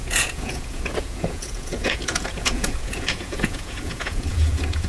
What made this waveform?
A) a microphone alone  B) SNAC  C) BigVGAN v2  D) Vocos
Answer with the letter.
D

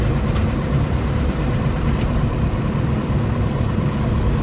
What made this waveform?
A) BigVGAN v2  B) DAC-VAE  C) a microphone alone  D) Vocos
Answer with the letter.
C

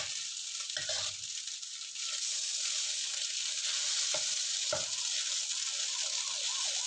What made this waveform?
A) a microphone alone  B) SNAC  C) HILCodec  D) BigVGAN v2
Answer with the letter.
A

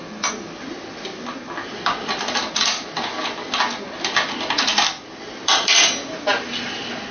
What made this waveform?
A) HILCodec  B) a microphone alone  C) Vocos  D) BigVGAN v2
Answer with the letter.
B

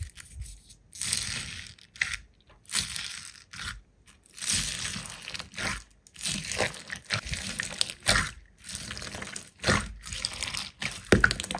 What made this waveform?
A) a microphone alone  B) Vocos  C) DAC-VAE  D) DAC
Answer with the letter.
A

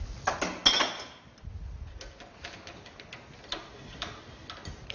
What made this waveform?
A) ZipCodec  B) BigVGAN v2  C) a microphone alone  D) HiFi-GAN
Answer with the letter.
C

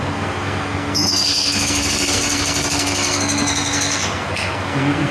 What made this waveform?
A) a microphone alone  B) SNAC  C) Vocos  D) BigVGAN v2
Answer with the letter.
B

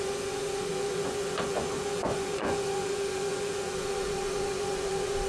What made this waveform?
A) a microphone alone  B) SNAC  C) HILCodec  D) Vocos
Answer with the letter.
D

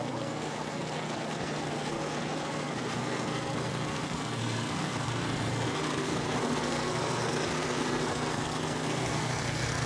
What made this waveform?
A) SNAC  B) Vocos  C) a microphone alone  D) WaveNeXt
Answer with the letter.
A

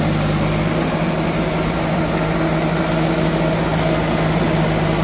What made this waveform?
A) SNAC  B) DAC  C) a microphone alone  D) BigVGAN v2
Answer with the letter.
C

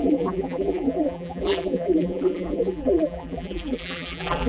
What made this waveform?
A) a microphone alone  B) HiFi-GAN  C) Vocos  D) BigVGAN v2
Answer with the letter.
D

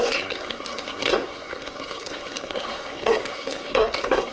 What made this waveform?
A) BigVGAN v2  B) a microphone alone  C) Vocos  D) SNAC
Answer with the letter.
D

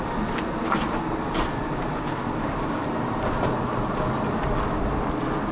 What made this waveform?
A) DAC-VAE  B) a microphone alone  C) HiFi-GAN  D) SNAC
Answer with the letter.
B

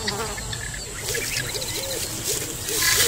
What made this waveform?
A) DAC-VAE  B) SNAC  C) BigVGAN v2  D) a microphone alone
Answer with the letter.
D